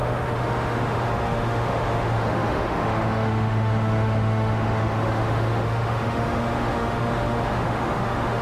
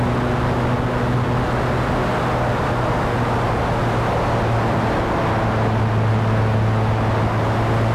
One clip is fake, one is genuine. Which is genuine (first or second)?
second